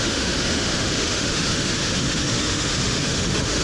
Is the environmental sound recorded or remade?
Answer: remade